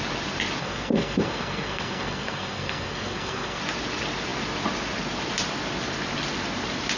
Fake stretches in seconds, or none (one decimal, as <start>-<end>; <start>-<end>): 0.6-3.6